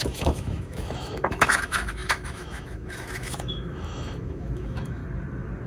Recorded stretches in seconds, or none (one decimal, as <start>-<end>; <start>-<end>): 5.0-5.7